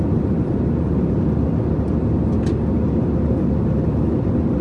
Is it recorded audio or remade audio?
recorded